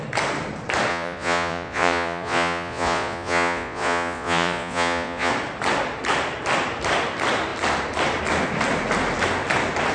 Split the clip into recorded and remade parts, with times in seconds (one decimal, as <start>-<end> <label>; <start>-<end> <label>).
0.0-0.9 recorded; 0.9-5.3 remade; 5.3-9.9 recorded